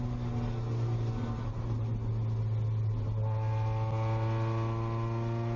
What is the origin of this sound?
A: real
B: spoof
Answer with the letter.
A